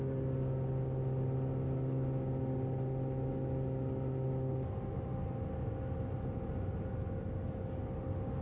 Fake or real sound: real